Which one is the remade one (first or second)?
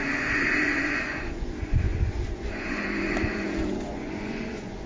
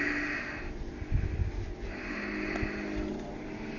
first